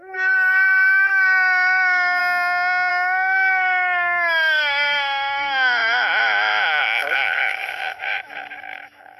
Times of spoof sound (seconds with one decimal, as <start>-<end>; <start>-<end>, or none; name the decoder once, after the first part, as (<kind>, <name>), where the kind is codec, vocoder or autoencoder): 0.0-2.2 (autoencoder, DAC-VAE); 2.9-9.2